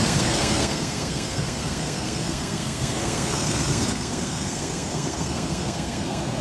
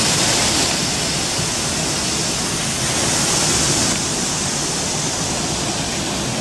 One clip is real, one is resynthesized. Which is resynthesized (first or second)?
first